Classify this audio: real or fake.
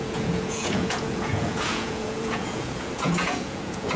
fake